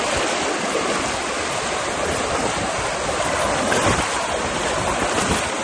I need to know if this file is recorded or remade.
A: recorded